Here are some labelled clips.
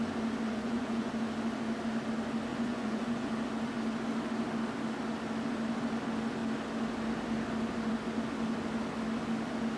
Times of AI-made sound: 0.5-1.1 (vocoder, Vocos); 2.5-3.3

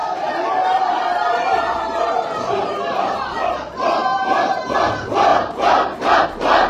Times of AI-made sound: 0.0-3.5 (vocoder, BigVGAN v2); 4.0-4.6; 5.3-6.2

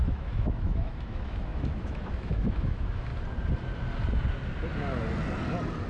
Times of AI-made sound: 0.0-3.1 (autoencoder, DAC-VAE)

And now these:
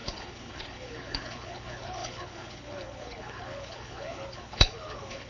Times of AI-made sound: 0.0-5.3 (codec, HILCodec)